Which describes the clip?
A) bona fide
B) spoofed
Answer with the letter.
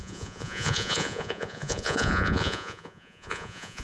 B